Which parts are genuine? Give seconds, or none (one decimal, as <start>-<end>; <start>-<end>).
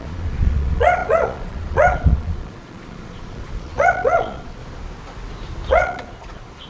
4.6-5.7